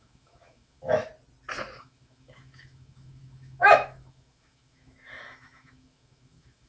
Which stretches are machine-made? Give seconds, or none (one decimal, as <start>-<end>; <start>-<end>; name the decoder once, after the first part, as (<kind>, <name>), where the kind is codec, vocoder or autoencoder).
0.0-1.1 (autoencoder, DAC-VAE); 1.8-6.7